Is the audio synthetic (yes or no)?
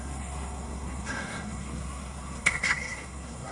yes